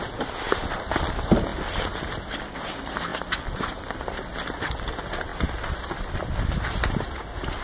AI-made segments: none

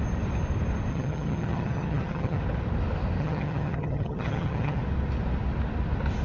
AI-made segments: 0.9-2.4 (vocoder, HiFi-GAN); 3.2-4.8